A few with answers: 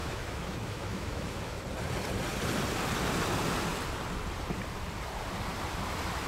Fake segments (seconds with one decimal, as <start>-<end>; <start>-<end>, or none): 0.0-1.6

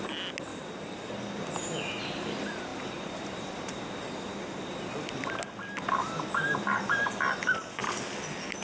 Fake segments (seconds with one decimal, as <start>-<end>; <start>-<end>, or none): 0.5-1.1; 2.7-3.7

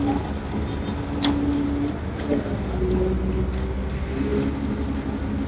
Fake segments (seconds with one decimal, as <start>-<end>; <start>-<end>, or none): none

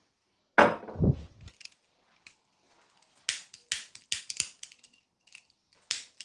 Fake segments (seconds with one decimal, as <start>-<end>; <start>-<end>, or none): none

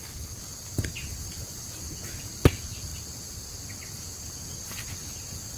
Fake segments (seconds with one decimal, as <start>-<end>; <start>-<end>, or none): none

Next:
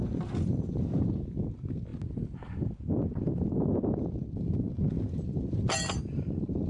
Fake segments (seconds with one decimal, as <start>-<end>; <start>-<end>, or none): none

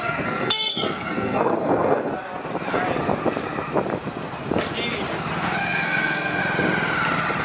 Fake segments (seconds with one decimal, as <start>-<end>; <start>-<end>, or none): 0.0-2.1; 5.6-6.4

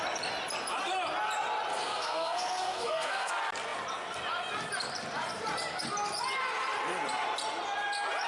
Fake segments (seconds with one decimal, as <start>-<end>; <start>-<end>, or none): 1.7-3.3